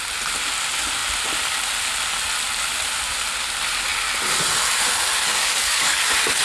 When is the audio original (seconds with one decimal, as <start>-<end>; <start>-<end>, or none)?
0.0-5.3; 6.0-6.4